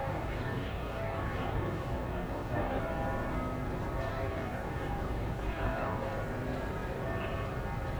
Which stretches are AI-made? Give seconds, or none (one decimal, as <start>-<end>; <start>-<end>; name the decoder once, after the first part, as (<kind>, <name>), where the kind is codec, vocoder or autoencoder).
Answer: 0.0-2.8 (codec, DAC); 4.1-6.1